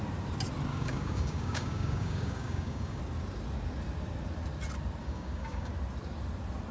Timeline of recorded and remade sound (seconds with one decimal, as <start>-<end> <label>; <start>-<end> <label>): 0.0-0.7 recorded; 0.7-3.0 remade; 3.0-5.0 recorded; 5.0-5.7 remade; 5.7-6.7 recorded